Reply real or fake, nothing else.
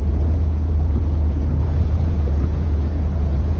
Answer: fake